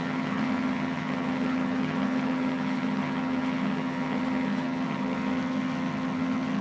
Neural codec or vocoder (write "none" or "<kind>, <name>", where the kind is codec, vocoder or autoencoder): vocoder, HiFi-GAN